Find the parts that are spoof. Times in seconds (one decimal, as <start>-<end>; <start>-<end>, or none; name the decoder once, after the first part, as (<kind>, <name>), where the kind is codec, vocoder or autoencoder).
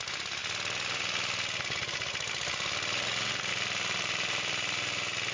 0.0-0.4 (vocoder, BigVGAN v2); 3.5-5.3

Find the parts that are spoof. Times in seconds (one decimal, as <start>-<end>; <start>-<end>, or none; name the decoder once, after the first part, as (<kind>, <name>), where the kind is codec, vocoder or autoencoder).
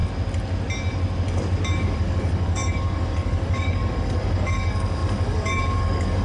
1.8-6.2 (codec, DAC)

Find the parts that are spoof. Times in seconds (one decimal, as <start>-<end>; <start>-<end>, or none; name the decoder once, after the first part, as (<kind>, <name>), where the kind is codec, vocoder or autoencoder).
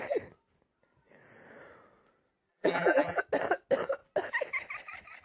2.5-3.2 (vocoder, BigVGAN v2)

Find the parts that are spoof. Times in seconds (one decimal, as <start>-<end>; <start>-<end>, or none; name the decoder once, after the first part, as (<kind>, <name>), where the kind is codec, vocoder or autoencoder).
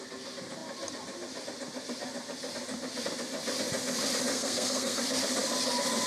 4.3-5.0 (codec, SNAC)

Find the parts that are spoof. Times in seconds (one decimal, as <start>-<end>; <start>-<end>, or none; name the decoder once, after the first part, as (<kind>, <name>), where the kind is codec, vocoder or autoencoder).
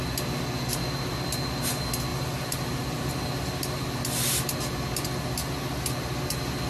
2.1-3.1 (vocoder, BigVGAN v2)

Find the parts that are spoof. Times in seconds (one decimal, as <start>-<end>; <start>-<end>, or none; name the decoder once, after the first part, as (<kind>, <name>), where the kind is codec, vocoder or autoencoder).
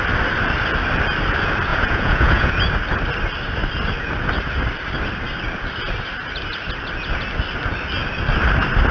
1.7-2.5 (vocoder, Vocos)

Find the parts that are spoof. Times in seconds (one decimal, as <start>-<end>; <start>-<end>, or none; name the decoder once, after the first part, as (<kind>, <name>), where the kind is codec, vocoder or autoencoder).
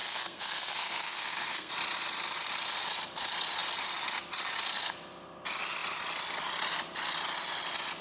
0.0-1.7 (codec, SNAC)